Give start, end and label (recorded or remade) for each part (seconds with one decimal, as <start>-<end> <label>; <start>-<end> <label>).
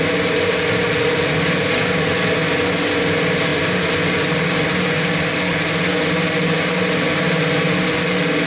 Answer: 0.0-8.5 recorded